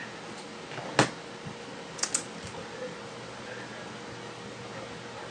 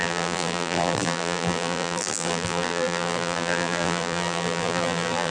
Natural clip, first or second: first